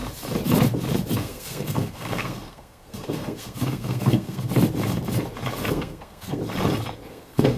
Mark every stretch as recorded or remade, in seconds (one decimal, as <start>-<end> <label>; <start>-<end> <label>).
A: 0.0-1.2 recorded; 1.2-4.5 remade; 4.5-5.7 recorded; 5.7-6.4 remade; 6.4-7.1 recorded; 7.1-7.6 remade